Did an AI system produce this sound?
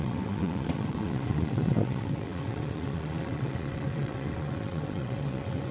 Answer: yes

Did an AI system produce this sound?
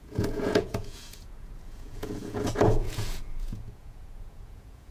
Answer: yes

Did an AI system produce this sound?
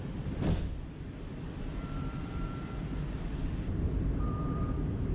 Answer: yes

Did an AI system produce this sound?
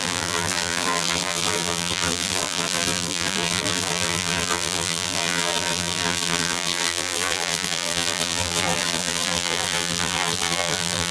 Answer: yes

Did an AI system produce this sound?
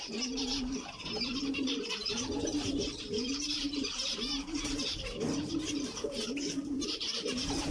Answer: yes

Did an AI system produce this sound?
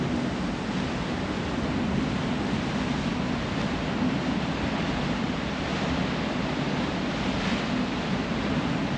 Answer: no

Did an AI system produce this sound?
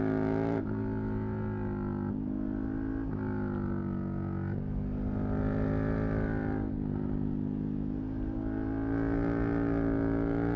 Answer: no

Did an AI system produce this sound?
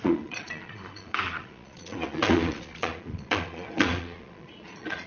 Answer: yes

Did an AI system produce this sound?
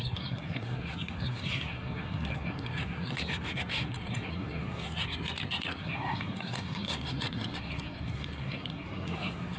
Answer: yes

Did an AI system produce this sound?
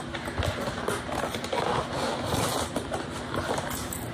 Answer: no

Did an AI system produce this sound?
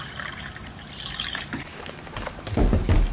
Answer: yes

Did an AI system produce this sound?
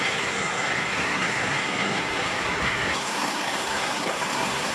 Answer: yes